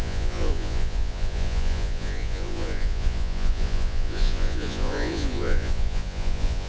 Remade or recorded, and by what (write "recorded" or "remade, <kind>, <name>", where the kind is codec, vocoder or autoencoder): remade, vocoder, Vocos